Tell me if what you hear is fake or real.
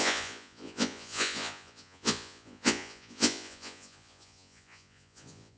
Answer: fake